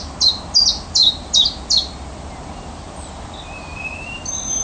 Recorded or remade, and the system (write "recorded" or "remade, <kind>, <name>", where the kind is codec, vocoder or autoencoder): recorded